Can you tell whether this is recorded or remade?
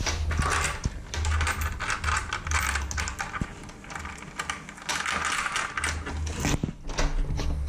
recorded